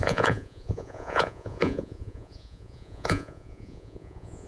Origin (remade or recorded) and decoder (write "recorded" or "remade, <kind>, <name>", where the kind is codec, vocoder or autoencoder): remade, vocoder, Vocos